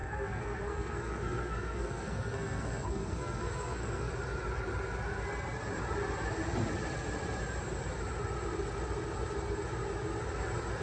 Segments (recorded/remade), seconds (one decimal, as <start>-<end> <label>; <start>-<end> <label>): 0.0-4.1 remade; 4.1-10.8 recorded